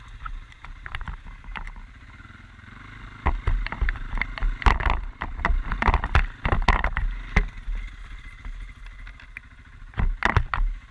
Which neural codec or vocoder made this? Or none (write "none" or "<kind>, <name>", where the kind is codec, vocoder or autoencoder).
none